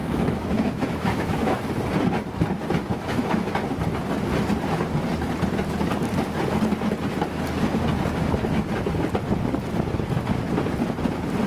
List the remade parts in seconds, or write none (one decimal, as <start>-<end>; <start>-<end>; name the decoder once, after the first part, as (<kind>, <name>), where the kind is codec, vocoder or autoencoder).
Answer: 0.0-1.7 (autoencoder, DAC-VAE); 2.9-3.5